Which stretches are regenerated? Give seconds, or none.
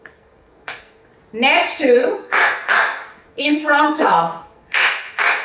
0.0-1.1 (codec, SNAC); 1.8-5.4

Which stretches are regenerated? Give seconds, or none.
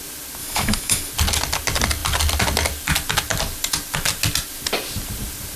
0.4-1.1 (autoencoder, DAC-VAE)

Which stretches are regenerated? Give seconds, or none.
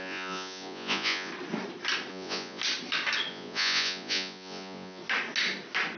0.0-1.3 (vocoder, Vocos); 2.1-2.6; 3.3-5.0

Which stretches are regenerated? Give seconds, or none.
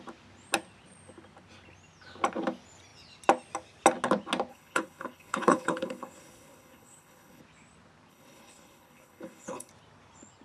4.5-7.4 (codec, HILCodec); 8.1-9.7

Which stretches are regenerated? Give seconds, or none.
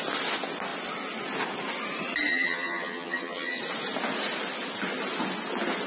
2.3-3.6 (vocoder, HiFi-GAN)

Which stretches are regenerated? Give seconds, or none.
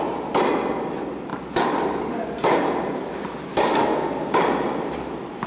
3.8-4.3 (codec, SNAC)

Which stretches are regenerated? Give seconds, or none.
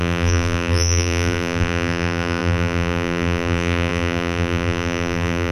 0.0-5.5 (vocoder, BigVGAN v2)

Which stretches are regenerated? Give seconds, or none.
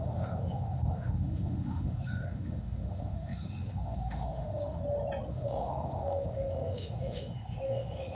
0.0-4.8 (autoencoder, DAC-VAE); 5.3-8.1